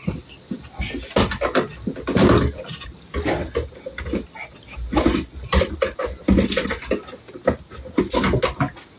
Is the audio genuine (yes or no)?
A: yes